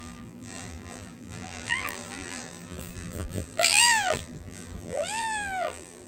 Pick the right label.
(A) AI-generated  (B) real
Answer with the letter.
A